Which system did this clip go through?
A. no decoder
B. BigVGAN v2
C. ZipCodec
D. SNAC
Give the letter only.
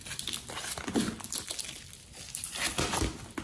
A